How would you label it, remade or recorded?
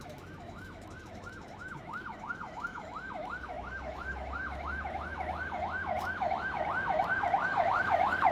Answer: remade